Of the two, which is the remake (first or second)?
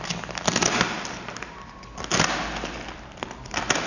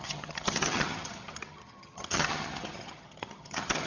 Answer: second